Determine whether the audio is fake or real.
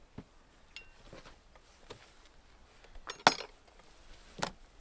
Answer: real